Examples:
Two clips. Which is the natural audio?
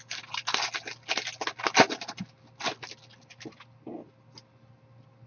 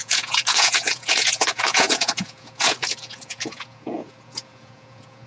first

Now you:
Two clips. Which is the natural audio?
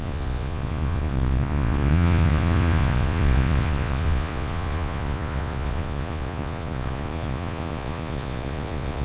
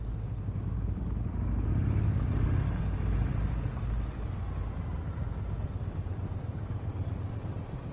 second